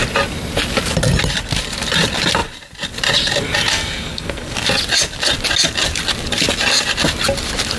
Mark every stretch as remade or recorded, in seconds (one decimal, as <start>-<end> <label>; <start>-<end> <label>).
0.0-3.7 recorded; 3.7-4.5 remade; 4.5-7.8 recorded